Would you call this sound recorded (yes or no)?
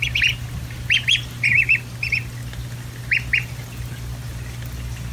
yes